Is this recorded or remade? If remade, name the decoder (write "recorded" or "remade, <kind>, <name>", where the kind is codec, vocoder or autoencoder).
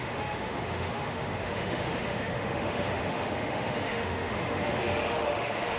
remade, autoencoder, DAC-VAE